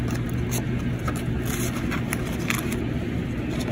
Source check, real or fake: real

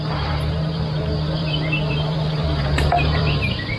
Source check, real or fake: fake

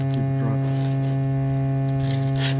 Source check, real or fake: real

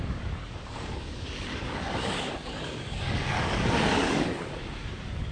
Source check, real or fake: fake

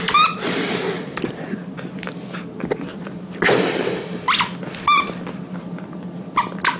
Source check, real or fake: real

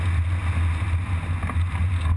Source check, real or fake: real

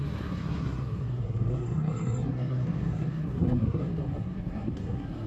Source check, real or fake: fake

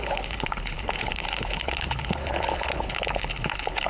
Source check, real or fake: fake